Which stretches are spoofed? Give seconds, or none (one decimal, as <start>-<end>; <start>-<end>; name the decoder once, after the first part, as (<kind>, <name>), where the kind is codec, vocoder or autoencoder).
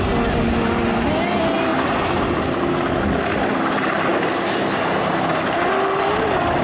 none